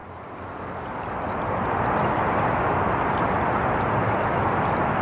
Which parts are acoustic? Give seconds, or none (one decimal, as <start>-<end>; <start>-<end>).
0.0-5.0